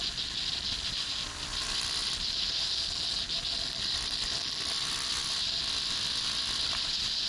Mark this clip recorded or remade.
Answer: recorded